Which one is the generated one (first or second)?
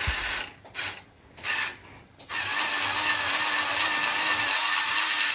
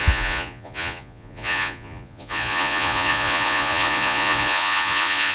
second